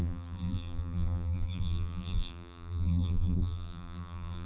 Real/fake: fake